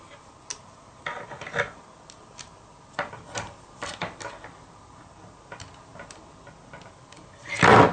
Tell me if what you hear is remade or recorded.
recorded